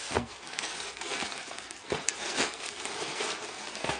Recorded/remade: remade